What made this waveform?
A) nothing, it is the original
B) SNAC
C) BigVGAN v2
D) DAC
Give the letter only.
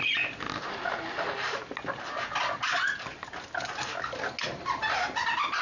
A